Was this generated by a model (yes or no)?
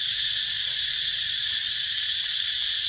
yes